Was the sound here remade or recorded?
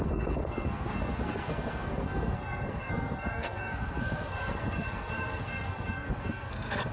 remade